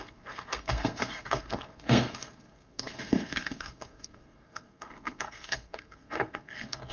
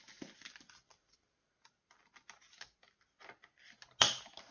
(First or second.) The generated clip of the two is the first